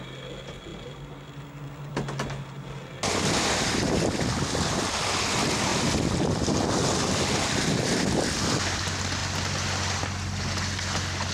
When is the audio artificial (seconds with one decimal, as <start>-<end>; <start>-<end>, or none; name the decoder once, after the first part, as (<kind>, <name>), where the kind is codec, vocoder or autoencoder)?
none